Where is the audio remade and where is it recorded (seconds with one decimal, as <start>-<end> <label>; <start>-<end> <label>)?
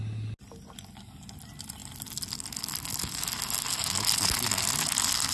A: 0.0-5.3 recorded